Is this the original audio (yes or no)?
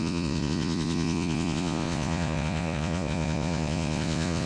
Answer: no